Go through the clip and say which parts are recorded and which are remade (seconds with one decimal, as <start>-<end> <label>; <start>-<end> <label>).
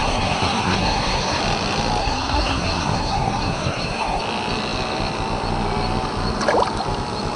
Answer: 0.0-1.4 remade; 1.4-2.0 recorded; 2.0-4.2 remade; 4.2-7.4 recorded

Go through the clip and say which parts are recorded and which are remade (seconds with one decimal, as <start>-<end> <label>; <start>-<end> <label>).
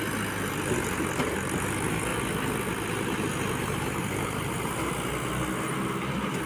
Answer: 0.0-3.6 recorded; 3.6-4.9 remade; 4.9-6.5 recorded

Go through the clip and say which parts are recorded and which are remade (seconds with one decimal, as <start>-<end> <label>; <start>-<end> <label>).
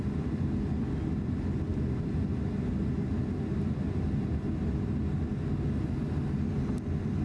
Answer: 0.0-7.2 recorded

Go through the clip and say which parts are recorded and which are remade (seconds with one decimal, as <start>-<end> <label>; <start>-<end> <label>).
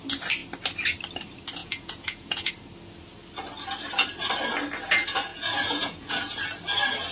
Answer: 0.0-1.6 recorded; 1.6-2.5 remade; 2.5-5.3 recorded; 5.3-6.4 remade; 6.4-7.1 recorded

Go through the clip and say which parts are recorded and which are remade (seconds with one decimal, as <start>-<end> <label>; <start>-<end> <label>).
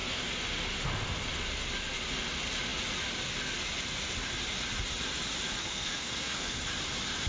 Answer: 0.0-5.6 recorded; 5.6-6.6 remade; 6.6-7.3 recorded